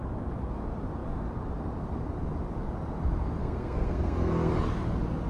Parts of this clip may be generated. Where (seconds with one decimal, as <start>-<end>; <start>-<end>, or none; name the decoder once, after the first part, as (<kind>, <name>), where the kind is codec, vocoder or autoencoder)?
3.4-4.5 (codec, SNAC)